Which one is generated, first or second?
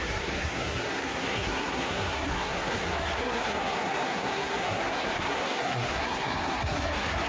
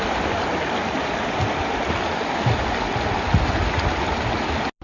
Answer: first